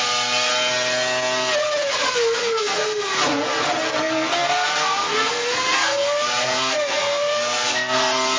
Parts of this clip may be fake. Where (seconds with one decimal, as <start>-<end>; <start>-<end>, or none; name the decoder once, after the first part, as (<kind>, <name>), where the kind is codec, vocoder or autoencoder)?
0.0-0.5 (codec, SNAC); 1.9-3.2; 4.0-8.4